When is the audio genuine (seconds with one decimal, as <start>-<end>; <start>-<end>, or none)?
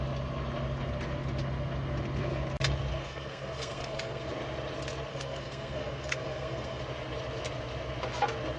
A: 0.0-2.9; 4.3-5.1; 6.8-8.6